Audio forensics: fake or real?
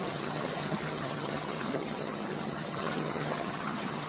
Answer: fake